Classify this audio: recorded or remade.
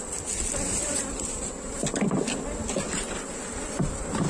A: recorded